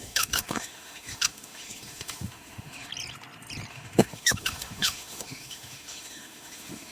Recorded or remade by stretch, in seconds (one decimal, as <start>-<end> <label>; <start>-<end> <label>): 0.0-2.9 remade; 2.9-3.7 recorded; 3.7-6.9 remade